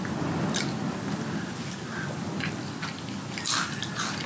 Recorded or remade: recorded